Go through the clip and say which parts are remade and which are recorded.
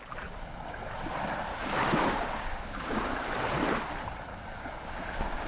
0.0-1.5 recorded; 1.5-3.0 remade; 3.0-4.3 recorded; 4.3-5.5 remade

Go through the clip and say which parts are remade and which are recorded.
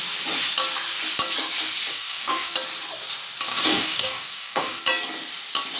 0.0-1.9 recorded; 1.9-2.5 remade; 2.5-3.5 recorded; 3.5-4.8 remade; 4.8-5.8 recorded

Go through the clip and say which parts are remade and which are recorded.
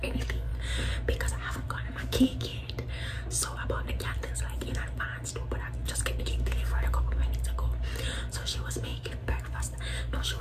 0.0-0.5 remade; 0.5-1.3 recorded; 1.3-2.5 remade; 2.5-6.2 recorded; 6.2-7.2 remade; 7.2-8.2 recorded; 8.2-10.4 remade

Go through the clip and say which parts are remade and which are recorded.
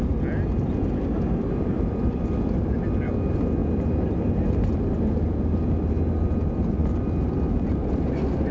0.0-8.5 recorded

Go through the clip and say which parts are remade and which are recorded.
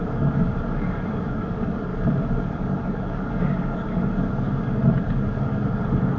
0.0-1.9 remade; 1.9-2.4 recorded; 2.4-6.2 remade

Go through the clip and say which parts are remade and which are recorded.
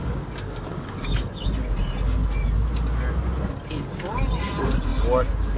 0.0-1.5 remade; 1.5-5.6 recorded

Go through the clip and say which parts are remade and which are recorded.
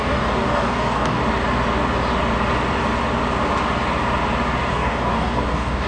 0.0-1.2 remade; 1.2-4.7 recorded; 4.7-5.9 remade